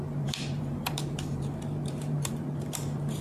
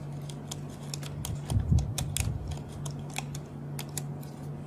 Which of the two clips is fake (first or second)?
first